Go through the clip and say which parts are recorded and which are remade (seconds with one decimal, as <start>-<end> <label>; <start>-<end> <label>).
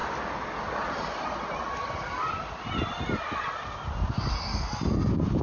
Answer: 0.0-5.4 recorded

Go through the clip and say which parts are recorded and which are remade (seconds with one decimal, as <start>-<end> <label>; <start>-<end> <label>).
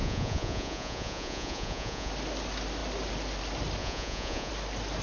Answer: 0.0-2.1 remade; 2.1-3.8 recorded; 3.8-4.5 remade; 4.5-5.0 recorded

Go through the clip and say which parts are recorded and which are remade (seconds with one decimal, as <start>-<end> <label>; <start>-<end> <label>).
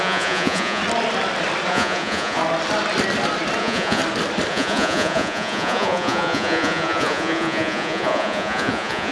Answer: 0.0-0.8 remade; 0.8-1.7 recorded; 1.7-2.4 remade; 2.4-3.6 recorded; 3.6-4.0 remade; 4.0-4.5 recorded; 4.5-9.1 remade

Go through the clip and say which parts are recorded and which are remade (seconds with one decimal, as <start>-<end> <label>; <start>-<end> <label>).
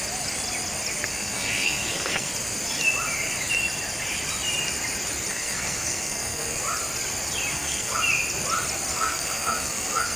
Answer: 0.0-1.1 recorded; 1.1-2.3 remade; 2.3-5.3 recorded; 5.3-6.6 remade; 6.6-7.5 recorded; 7.5-8.0 remade; 8.0-8.9 recorded; 8.9-10.2 remade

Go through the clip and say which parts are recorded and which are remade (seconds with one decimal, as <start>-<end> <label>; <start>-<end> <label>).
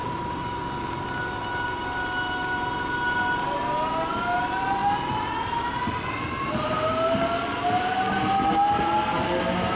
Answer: 0.0-0.6 remade; 0.6-9.8 recorded